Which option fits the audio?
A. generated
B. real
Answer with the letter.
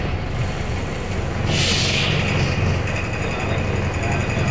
B